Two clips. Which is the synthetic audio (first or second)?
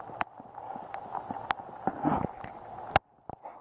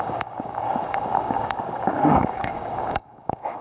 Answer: second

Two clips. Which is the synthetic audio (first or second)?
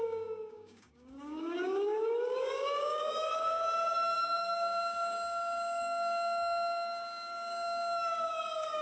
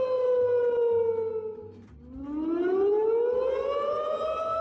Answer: first